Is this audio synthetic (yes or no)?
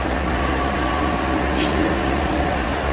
yes